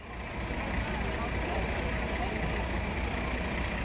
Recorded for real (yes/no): yes